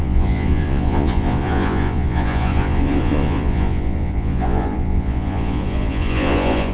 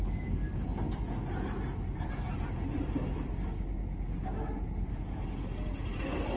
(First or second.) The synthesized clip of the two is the first